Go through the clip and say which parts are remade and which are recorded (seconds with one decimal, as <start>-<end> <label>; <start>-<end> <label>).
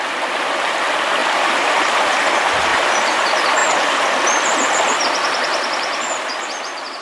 0.0-1.2 recorded; 1.2-2.2 remade; 2.2-2.7 recorded; 2.7-3.2 remade; 3.2-3.6 recorded; 3.6-6.3 remade; 6.3-7.0 recorded